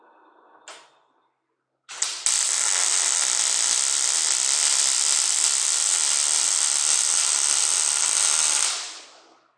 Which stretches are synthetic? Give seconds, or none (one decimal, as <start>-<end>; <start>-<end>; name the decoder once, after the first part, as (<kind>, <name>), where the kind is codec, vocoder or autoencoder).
none